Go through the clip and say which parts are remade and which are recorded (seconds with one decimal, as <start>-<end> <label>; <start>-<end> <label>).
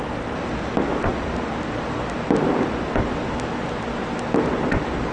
0.0-5.1 recorded